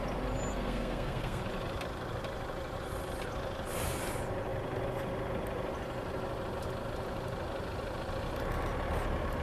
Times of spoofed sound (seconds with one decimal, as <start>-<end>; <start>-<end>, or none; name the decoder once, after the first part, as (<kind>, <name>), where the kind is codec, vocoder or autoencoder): 0.5-1.4 (codec, SNAC)